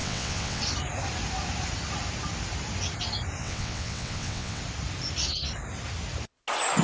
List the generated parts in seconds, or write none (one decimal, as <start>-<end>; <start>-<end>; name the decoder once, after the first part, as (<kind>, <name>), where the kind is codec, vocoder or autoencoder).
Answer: 0.0-0.6 (vocoder, WaveNeXt); 3.4-4.6